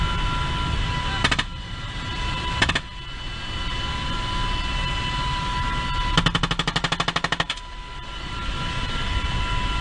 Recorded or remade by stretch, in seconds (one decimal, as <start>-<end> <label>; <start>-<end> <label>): 0.0-9.8 recorded